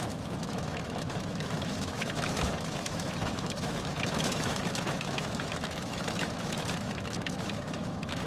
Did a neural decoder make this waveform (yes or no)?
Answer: yes